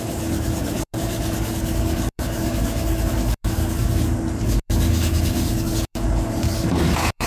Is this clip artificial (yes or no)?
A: yes